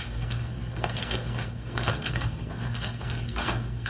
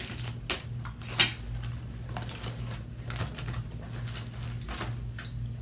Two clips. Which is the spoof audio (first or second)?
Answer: first